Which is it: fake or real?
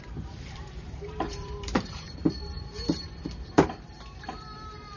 fake